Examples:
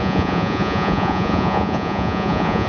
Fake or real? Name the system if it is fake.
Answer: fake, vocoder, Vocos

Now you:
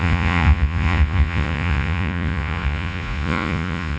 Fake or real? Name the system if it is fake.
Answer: fake, vocoder, Vocos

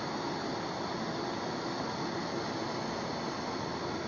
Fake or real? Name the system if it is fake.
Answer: real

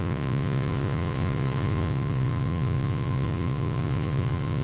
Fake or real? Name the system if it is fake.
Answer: fake, vocoder, Vocos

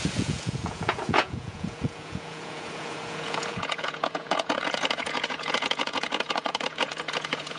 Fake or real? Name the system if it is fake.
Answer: fake, vocoder, Vocos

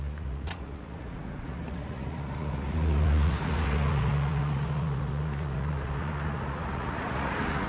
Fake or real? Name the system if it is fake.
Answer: fake, vocoder, Vocos